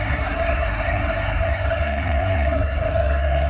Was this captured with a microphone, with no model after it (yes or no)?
no